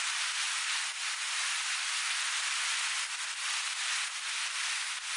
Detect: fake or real real